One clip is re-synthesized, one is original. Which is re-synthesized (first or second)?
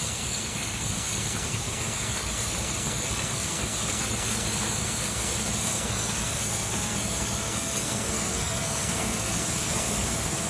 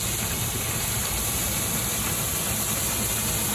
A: first